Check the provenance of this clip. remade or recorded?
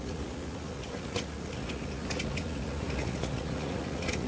remade